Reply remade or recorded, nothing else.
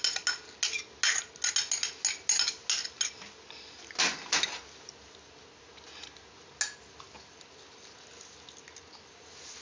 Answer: recorded